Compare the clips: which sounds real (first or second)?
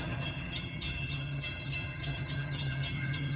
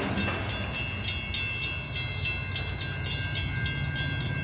second